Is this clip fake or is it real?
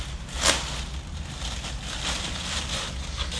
real